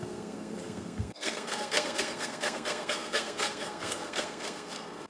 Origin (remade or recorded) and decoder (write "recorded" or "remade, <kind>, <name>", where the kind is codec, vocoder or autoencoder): remade, codec, SNAC